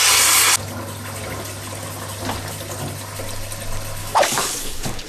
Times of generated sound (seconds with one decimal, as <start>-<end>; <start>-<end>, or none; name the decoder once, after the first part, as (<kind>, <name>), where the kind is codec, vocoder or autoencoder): 4.0-5.1 (codec, DAC)